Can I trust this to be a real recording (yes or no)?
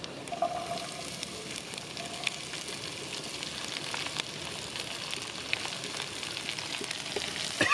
yes